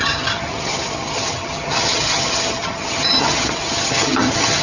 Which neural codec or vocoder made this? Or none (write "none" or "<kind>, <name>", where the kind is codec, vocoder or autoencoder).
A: vocoder, HiFi-GAN